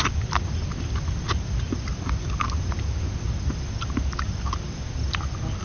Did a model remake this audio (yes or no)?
no